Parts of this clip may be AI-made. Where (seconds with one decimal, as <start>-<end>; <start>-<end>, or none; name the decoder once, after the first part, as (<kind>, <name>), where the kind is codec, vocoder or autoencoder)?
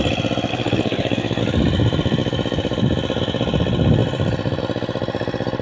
0.5-1.4 (codec, SNAC)